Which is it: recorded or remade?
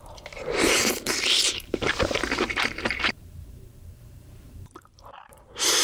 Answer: remade